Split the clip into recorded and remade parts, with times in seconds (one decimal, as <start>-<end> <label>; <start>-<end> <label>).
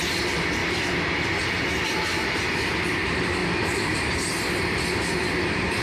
0.0-5.8 recorded